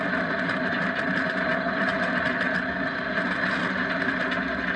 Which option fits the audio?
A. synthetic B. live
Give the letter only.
B